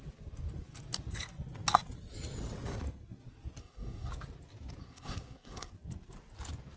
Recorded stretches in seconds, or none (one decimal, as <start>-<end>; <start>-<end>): 0.0-3.6; 4.1-4.8; 5.7-6.8